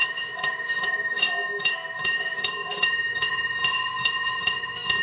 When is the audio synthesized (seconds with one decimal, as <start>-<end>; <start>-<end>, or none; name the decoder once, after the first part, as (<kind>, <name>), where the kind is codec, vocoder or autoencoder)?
0.0-5.0 (autoencoder, DAC-VAE)